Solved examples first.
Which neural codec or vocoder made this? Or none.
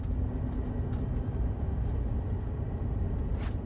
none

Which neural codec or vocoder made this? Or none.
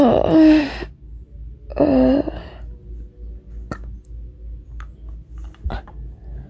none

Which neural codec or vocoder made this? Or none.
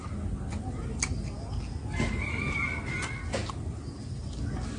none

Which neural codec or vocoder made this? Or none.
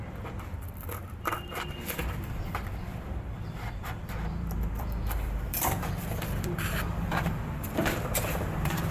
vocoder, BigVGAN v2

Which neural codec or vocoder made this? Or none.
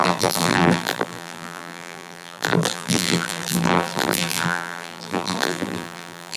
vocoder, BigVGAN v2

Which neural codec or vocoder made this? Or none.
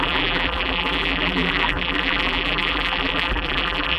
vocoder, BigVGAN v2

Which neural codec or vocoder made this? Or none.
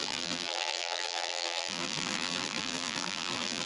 vocoder, BigVGAN v2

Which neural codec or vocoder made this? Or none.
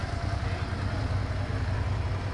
none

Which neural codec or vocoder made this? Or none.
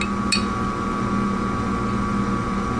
none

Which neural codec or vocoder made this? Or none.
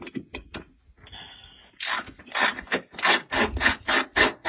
none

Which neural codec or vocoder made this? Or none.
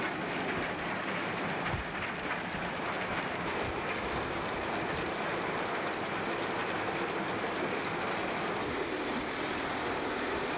none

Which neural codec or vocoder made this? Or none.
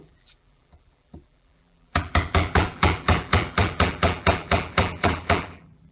vocoder, BigVGAN v2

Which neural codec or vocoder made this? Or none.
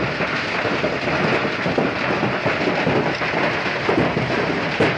none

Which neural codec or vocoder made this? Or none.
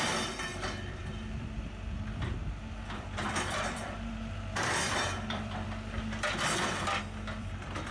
vocoder, BigVGAN v2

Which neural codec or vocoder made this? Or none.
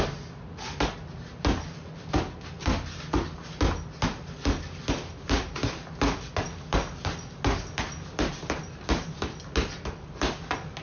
none